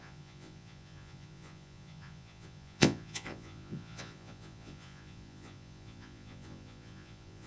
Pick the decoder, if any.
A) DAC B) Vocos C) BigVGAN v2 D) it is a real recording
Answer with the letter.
B